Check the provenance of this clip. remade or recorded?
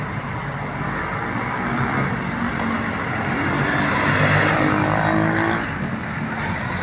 recorded